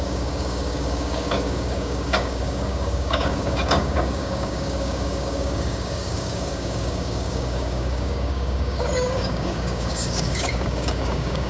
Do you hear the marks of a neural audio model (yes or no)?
yes